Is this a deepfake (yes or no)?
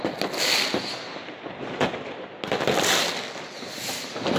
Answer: no